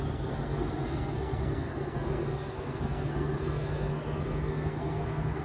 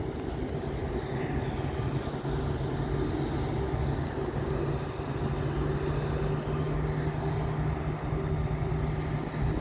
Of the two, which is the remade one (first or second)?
first